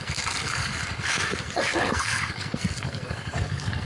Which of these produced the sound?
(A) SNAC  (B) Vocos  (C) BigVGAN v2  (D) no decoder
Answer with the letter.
A